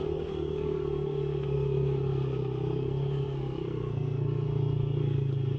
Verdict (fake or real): fake